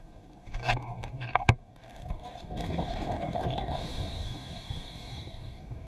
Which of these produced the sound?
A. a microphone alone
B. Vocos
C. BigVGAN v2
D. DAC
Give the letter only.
D